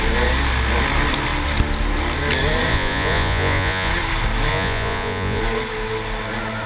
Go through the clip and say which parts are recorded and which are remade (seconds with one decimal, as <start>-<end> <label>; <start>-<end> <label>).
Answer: 0.0-2.7 recorded; 2.7-3.9 remade; 3.9-4.5 recorded; 4.5-5.4 remade; 5.4-6.7 recorded